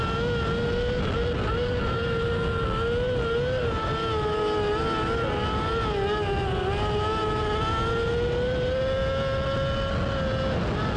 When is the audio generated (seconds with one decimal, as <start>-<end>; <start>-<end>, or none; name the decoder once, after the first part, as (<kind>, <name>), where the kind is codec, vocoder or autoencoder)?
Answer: none